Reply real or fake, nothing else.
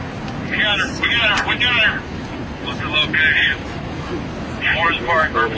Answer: real